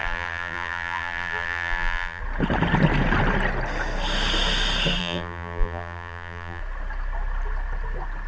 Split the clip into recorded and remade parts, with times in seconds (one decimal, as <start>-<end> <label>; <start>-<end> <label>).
0.0-2.2 remade; 2.2-5.0 recorded; 5.0-6.6 remade; 6.6-8.3 recorded